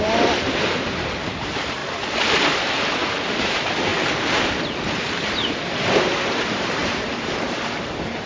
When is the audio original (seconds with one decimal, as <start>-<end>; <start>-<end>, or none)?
1.8-3.4; 3.9-4.9